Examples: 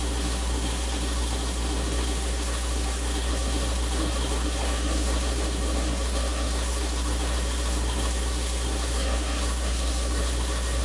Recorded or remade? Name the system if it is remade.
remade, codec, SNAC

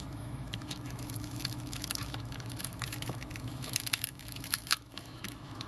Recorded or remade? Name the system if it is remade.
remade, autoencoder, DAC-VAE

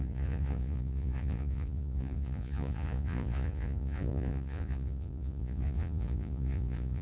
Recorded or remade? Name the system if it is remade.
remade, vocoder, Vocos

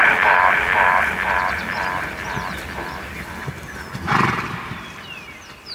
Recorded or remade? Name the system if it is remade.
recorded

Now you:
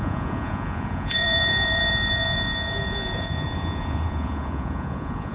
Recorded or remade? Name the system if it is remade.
remade, vocoder, Vocos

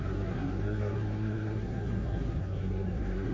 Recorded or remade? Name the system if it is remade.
remade, codec, SNAC